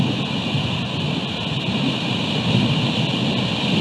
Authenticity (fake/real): real